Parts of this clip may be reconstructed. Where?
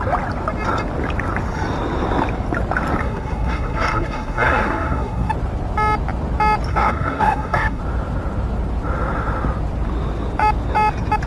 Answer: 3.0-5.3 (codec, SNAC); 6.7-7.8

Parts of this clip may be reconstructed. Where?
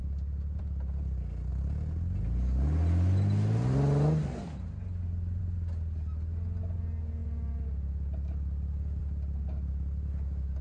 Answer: 0.0-0.6 (vocoder, BigVGAN v2)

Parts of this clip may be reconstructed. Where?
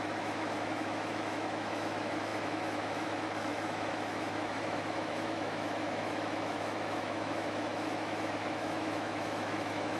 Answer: 0.0-10.0 (autoencoder, DAC-VAE)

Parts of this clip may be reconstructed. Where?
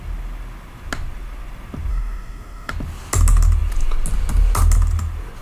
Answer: 1.9-2.7 (codec, DAC)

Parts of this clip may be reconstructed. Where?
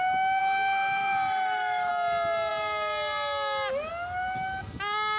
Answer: 0.4-1.9 (autoencoder, DAC-VAE)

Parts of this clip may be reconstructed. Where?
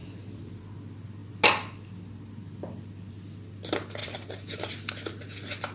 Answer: 0.0-0.6 (vocoder, BigVGAN v2); 4.0-4.7